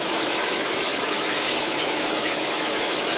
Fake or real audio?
fake